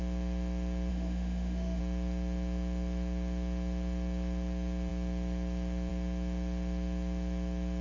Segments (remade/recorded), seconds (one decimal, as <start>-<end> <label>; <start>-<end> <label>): 0.0-0.9 recorded; 0.9-1.8 remade; 1.8-7.8 recorded